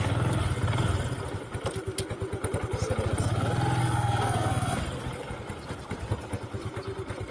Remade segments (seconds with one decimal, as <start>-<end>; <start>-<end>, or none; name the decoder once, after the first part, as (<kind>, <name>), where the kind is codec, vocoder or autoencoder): 3.8-4.8 (codec, SNAC)